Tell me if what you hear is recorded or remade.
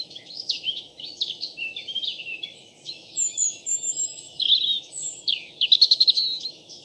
remade